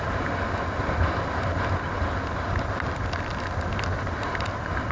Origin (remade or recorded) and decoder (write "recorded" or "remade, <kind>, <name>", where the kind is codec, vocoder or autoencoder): recorded